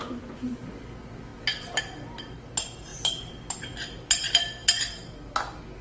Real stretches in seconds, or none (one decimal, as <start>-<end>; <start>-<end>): 0.0-5.8